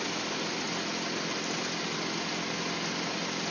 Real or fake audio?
real